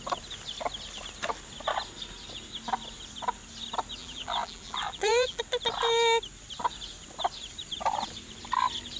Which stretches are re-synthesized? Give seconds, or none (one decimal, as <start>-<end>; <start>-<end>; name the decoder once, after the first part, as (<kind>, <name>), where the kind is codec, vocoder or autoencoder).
4.0-5.4 (vocoder, BigVGAN v2)